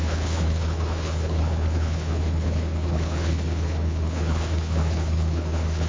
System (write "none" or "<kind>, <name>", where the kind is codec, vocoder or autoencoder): codec, HILCodec